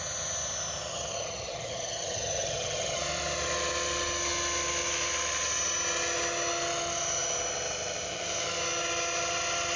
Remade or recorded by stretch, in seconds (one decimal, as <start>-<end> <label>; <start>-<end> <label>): 0.0-0.9 recorded; 0.9-3.0 remade; 3.0-9.8 recorded